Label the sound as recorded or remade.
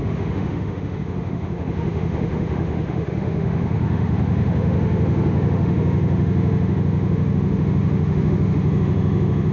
remade